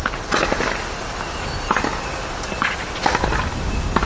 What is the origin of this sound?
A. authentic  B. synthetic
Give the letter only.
A